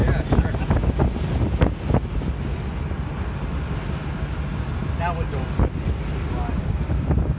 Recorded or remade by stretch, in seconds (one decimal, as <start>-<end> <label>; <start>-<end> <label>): 0.0-3.7 recorded; 3.7-4.8 remade; 4.8-6.5 recorded; 6.5-7.4 remade